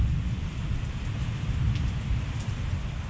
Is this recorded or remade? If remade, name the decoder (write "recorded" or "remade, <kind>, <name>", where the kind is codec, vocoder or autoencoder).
recorded